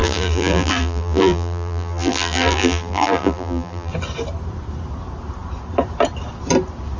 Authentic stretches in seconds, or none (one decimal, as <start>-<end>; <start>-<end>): 3.9-7.0